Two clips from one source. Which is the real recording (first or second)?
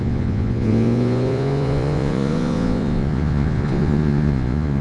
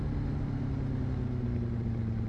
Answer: second